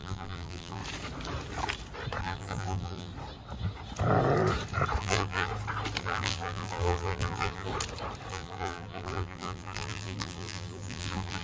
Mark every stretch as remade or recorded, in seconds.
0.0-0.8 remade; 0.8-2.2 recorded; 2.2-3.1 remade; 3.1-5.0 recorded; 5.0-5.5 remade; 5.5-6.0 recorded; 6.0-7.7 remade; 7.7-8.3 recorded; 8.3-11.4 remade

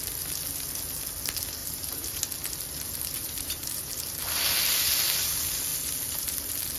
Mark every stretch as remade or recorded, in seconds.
0.0-1.6 recorded; 1.6-2.2 remade; 2.2-3.1 recorded; 3.1-3.9 remade; 3.9-6.8 recorded

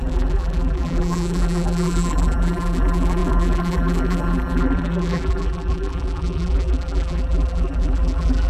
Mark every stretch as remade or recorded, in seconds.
0.0-8.5 remade

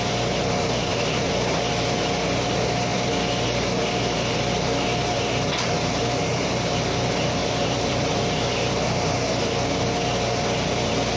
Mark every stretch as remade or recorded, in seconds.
0.0-0.9 recorded; 0.9-1.7 remade; 1.7-7.4 recorded; 7.4-9.4 remade; 9.4-11.2 recorded

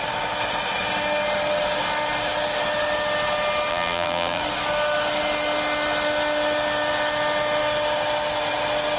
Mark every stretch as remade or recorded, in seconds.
0.0-3.7 recorded; 3.7-4.4 remade; 4.4-9.0 recorded

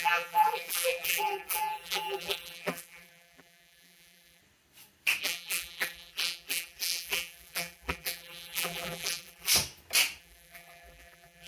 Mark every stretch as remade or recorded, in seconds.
0.0-4.4 remade; 4.4-5.2 recorded; 5.2-9.5 remade; 9.5-10.2 recorded; 10.2-11.5 remade